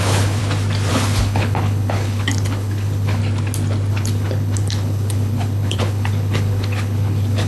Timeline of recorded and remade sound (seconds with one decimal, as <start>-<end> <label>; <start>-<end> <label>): 0.0-0.4 remade; 0.4-0.9 recorded; 0.9-3.2 remade; 3.2-3.9 recorded; 3.9-7.5 remade